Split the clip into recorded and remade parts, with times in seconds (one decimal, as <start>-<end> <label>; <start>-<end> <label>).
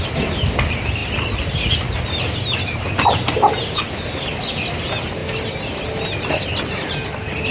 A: 0.0-7.5 recorded